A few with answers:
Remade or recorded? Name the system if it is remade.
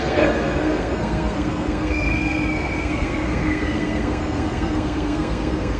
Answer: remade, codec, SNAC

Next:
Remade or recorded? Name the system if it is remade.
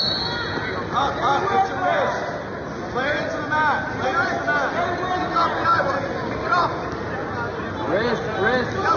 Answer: recorded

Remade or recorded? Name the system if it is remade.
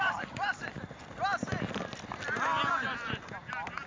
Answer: recorded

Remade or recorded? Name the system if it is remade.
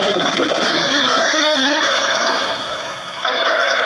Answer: remade, codec, SNAC